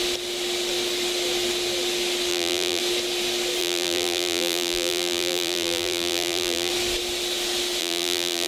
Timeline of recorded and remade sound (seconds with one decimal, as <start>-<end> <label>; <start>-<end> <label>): 0.0-2.3 recorded; 2.3-2.8 remade; 2.8-3.6 recorded; 3.6-6.7 remade; 6.7-7.8 recorded; 7.8-8.5 remade